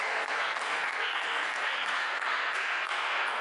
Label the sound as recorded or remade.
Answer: remade